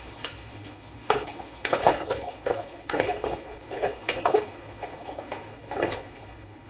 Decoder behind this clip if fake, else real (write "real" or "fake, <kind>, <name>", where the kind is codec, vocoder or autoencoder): fake, codec, HILCodec